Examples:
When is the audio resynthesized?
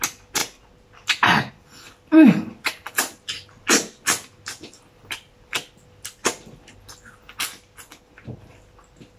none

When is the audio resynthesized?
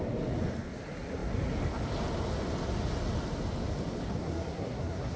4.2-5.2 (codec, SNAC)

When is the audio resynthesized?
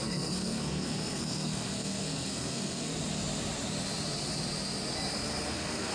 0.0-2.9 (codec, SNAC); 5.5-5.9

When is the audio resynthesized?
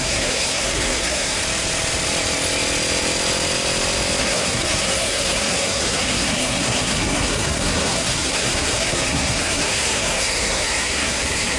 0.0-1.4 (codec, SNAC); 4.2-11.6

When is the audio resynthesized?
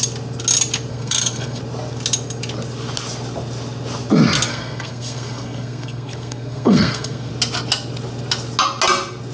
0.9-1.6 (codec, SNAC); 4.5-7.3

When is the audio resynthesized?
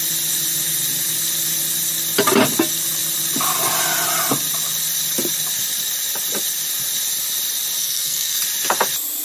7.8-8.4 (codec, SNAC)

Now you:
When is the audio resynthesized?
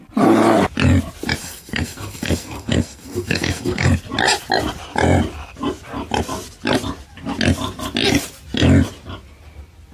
1.4-3.9 (codec, SNAC)